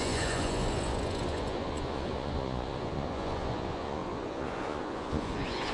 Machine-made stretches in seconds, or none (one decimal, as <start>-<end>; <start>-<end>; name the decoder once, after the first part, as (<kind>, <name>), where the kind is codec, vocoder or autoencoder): 0.0-5.7 (vocoder, Vocos)